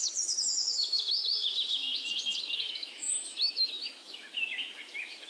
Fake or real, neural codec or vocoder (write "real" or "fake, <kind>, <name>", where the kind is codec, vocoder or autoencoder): fake, autoencoder, DAC-VAE